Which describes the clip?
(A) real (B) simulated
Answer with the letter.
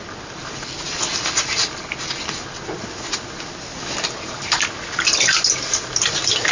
A